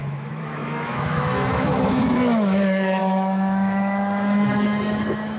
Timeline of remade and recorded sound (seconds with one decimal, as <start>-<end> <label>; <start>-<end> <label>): 0.0-5.4 remade